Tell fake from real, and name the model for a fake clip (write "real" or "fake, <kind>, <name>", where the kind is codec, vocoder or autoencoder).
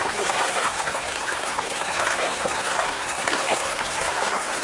fake, codec, SNAC